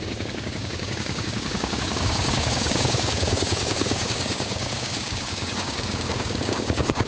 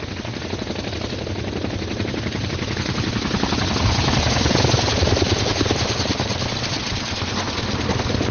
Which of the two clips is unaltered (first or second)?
second